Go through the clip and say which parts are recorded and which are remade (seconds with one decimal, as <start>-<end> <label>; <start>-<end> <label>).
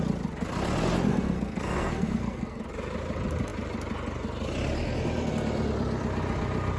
0.0-1.1 recorded; 1.1-2.6 remade; 2.6-6.8 recorded